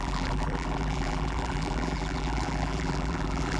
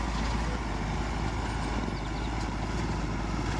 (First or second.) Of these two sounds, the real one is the second